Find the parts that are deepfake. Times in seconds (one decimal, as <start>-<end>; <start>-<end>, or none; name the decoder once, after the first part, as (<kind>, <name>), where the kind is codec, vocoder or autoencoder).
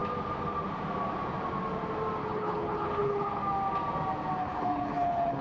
2.2-3.4 (codec, HILCodec); 4.4-5.4